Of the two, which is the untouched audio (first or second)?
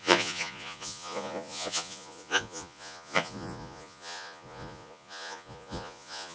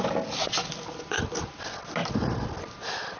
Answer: second